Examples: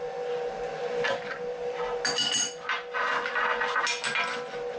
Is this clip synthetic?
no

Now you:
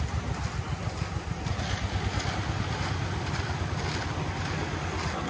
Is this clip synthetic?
no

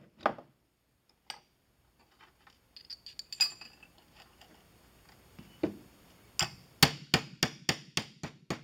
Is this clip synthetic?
no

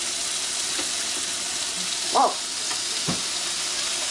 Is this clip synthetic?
no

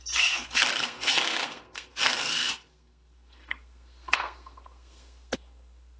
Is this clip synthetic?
yes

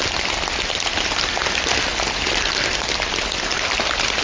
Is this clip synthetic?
no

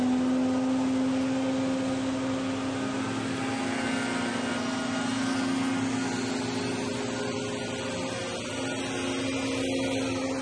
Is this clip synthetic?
no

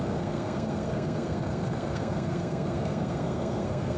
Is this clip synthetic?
yes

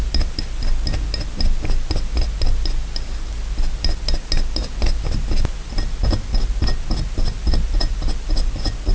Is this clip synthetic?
no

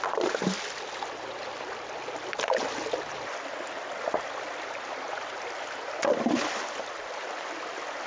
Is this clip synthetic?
no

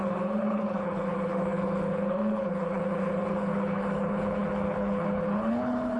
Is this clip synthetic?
yes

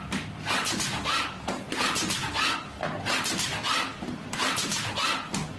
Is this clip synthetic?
yes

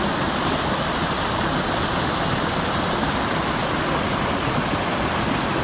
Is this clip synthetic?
no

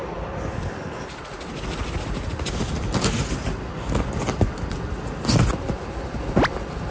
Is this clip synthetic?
no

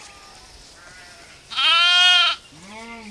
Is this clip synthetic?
no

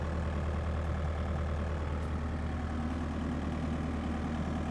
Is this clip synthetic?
no